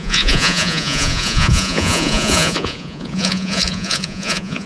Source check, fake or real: fake